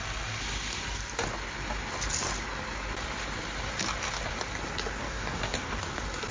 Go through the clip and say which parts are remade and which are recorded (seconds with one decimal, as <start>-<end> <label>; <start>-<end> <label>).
0.0-5.0 recorded; 5.0-5.8 remade; 5.8-6.3 recorded